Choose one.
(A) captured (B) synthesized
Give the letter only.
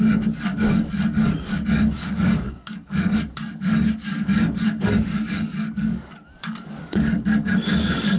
B